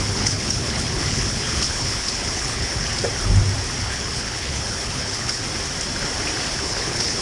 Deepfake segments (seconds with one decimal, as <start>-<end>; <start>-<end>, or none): 0.0-2.9; 3.8-5.4; 6.6-7.2